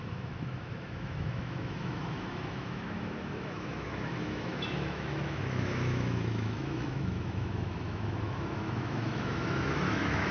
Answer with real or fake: fake